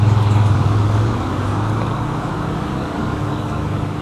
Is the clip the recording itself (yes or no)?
no